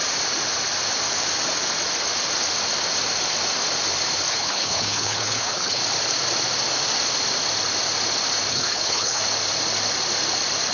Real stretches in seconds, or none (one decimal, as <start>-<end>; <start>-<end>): 0.0-4.3; 5.8-8.5; 9.2-10.7